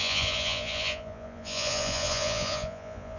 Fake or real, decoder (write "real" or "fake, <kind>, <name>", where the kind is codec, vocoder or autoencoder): fake, vocoder, Vocos